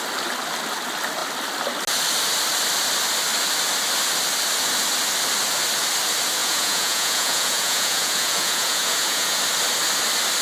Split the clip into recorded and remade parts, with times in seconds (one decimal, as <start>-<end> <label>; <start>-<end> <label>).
0.0-6.4 recorded; 6.4-9.4 remade; 9.4-10.4 recorded